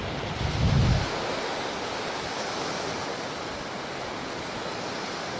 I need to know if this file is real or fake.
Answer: real